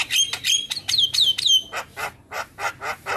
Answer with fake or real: real